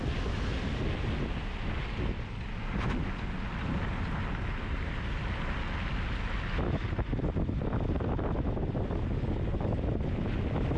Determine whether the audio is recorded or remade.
recorded